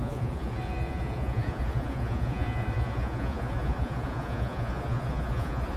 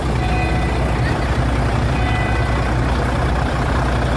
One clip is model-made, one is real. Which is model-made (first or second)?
first